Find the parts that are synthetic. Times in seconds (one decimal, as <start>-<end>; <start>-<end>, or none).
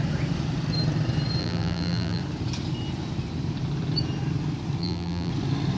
1.4-2.2; 4.8-5.3